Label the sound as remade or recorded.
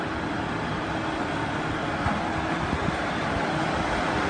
recorded